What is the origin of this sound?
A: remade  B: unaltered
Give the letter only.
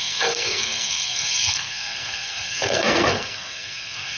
A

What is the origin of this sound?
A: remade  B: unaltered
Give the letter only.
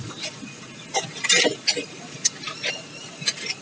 B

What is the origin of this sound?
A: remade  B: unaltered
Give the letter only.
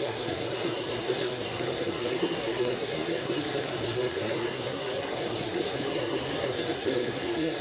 A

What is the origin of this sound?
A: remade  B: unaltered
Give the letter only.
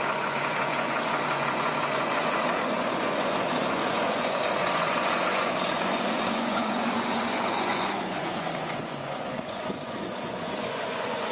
A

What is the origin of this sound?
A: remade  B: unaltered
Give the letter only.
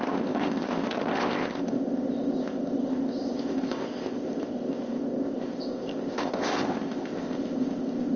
A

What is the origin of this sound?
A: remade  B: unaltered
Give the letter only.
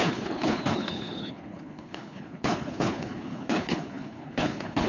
A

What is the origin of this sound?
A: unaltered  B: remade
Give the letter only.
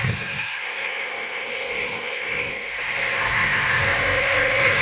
B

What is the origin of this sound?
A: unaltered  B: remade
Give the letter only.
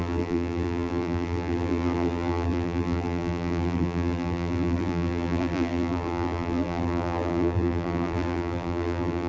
B